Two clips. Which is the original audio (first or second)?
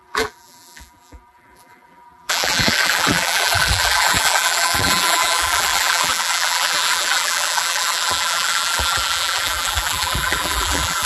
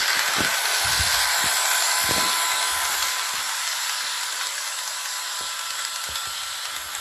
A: second